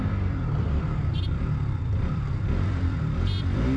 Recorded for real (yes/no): no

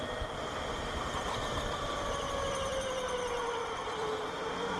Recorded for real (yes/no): no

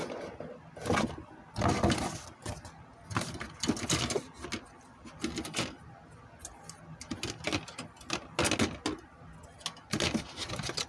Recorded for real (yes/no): yes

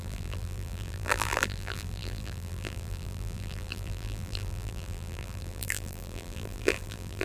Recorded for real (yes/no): no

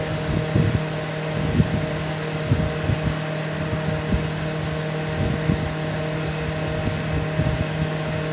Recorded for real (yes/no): yes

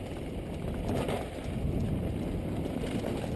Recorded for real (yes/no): yes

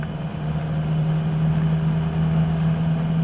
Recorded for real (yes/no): yes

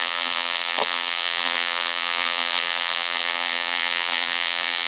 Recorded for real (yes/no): no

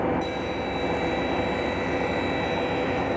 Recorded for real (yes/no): yes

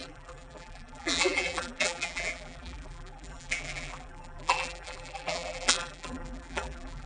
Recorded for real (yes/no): no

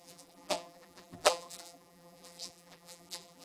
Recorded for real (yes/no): no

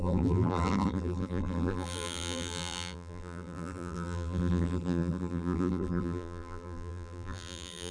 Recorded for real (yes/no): no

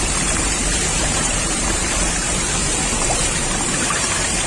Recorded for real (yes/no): no